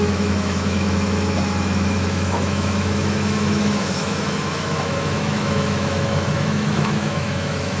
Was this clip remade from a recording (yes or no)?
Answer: yes